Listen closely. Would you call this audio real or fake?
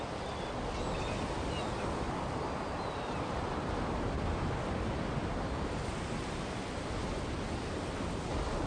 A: real